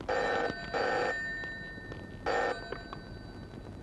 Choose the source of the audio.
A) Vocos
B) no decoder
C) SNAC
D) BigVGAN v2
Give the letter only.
B